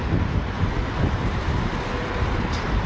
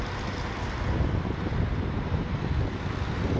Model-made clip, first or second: first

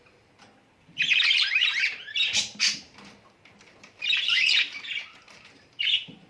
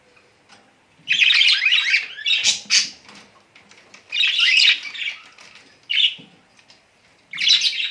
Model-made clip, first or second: first